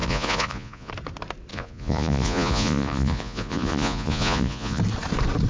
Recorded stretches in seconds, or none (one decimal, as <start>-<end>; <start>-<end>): 0.9-1.5; 4.8-5.5